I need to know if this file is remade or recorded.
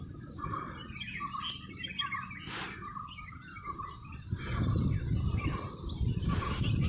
recorded